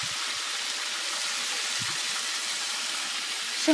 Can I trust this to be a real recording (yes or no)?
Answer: yes